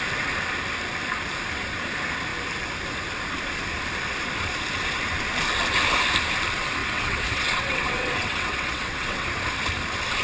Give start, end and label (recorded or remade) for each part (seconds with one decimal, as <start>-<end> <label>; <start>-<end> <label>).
0.0-6.8 recorded; 6.8-9.3 remade; 9.3-10.2 recorded